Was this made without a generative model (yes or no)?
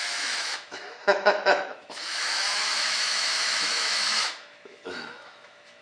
no